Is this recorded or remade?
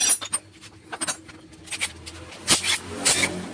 recorded